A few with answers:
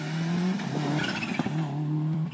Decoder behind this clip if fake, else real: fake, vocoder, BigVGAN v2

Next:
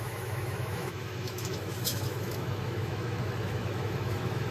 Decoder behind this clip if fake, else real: fake, autoencoder, DAC-VAE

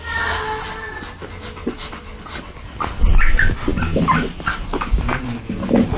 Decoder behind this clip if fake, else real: real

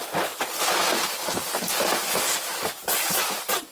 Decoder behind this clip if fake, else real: real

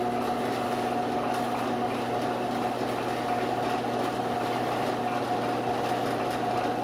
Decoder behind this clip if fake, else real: real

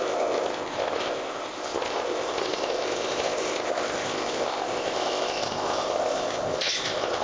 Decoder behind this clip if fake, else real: fake, codec, ZipCodec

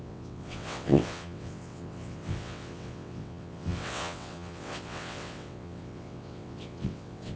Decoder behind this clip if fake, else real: fake, vocoder, WaveNeXt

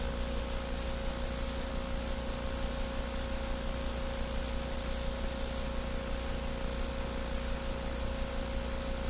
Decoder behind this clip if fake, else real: real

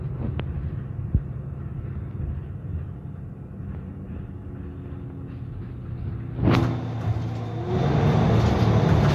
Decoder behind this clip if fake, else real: real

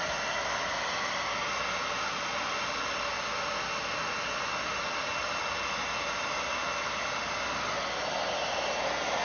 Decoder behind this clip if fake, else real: real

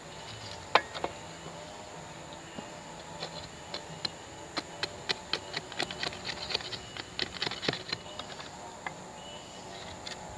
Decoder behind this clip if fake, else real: real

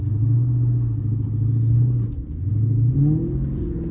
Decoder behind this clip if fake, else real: real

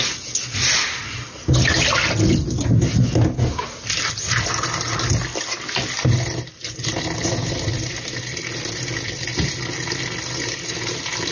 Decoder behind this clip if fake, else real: real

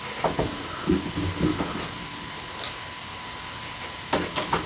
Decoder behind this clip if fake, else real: real